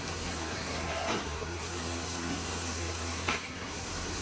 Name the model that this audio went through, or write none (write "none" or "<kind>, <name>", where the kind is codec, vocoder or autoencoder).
codec, SNAC